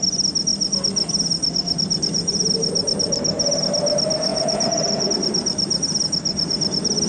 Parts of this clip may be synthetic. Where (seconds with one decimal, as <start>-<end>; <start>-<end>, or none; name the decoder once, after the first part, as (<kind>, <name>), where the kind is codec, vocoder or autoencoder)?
4.3-5.1 (vocoder, Vocos)

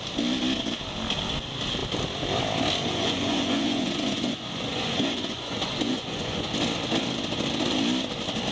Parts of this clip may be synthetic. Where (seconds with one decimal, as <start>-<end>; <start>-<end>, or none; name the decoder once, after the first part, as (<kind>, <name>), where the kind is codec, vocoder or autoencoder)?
2.8-6.5 (vocoder, Vocos)

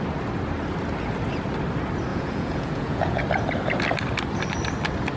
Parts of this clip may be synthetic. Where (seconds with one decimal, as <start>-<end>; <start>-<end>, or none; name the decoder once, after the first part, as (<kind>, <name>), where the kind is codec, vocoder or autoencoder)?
2.1-3.2 (vocoder, Vocos)

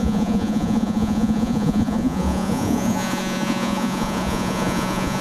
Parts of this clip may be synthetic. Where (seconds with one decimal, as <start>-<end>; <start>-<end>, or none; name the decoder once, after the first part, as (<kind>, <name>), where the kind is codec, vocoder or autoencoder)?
0.0-5.2 (vocoder, Vocos)

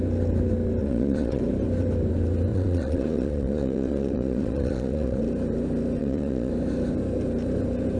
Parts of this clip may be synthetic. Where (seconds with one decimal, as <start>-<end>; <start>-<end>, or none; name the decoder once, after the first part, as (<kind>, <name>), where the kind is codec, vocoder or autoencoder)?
0.8-1.4 (vocoder, Vocos); 2.5-5.2; 6.0-6.5

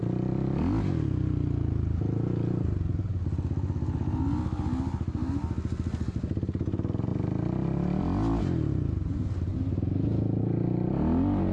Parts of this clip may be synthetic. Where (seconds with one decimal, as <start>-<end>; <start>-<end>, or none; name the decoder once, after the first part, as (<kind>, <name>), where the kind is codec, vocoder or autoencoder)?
none

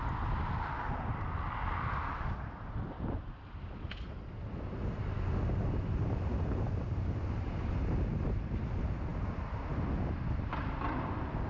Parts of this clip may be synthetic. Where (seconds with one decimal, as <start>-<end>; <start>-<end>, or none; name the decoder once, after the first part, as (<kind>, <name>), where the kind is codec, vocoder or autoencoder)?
none